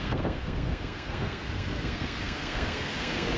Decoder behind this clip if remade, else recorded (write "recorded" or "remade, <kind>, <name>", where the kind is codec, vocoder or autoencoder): remade, codec, SNAC